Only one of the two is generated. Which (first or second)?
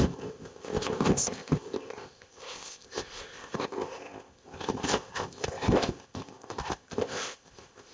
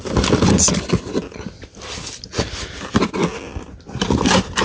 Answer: first